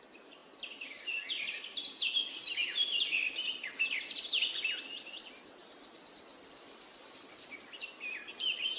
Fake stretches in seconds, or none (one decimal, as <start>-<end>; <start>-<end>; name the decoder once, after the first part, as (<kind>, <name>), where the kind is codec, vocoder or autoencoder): none